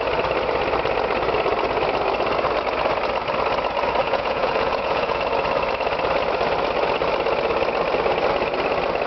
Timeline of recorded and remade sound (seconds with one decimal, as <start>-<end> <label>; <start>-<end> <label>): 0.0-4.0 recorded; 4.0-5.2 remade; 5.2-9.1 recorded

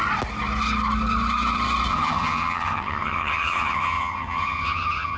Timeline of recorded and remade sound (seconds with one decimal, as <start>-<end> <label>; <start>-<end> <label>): 0.0-1.9 recorded; 1.9-5.2 remade

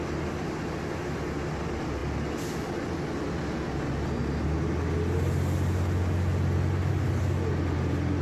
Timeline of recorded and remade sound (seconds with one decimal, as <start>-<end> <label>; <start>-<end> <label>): 0.0-8.2 recorded